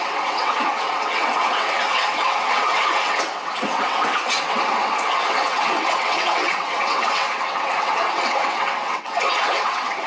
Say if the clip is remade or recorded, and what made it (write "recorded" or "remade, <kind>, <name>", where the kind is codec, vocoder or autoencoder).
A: remade, vocoder, WaveNeXt